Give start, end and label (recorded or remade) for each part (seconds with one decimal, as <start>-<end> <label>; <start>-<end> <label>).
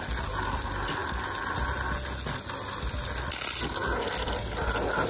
0.0-5.1 recorded